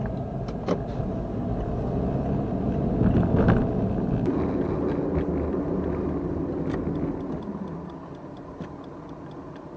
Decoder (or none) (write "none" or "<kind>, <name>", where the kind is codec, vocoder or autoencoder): none